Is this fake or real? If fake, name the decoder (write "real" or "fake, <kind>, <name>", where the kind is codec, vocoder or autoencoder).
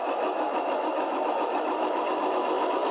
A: fake, autoencoder, DAC-VAE